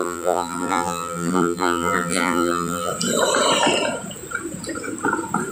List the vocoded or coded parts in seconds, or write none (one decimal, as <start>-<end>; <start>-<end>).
0.0-2.9